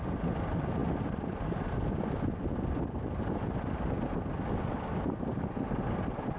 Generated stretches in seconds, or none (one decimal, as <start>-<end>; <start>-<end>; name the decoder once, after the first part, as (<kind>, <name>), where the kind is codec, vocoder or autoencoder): none